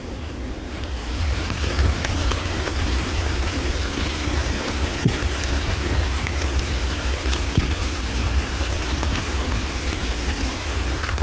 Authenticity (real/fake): fake